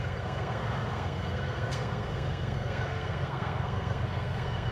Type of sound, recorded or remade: remade